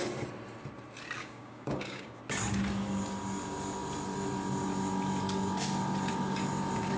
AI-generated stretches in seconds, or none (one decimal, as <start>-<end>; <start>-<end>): 1.2-2.2